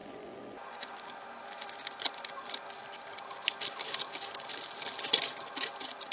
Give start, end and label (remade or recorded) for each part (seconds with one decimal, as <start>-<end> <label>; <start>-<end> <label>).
0.0-1.0 remade; 1.0-6.1 recorded